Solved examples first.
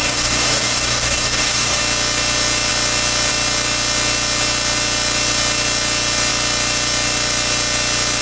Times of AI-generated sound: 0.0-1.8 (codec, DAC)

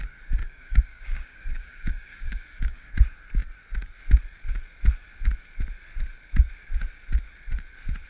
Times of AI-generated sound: 0.4-2.9 (codec, DAC)

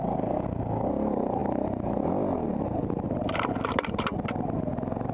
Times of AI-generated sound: 0.0-0.9 (codec, DAC)

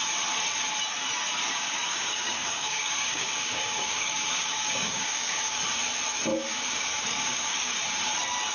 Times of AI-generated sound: 1.4-5.6 (codec, DAC); 6.3-7.7

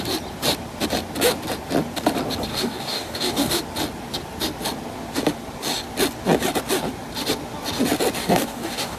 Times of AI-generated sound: 2.5-3.6 (codec, DAC); 8.2-9.0

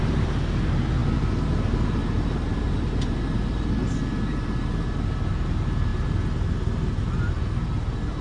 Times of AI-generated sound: none